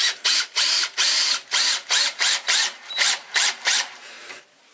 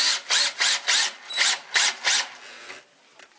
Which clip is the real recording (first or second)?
second